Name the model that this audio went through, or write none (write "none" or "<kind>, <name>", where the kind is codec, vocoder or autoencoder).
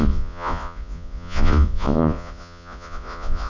vocoder, Vocos